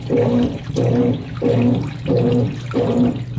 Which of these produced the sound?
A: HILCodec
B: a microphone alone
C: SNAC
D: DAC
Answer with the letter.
B